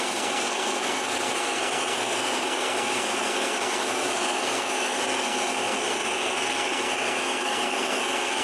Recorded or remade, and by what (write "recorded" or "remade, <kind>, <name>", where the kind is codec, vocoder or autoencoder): remade, codec, SNAC